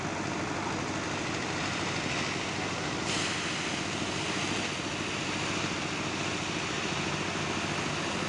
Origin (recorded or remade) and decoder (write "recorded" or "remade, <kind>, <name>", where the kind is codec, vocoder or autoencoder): recorded